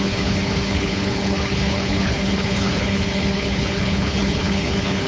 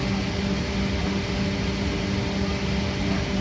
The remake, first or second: first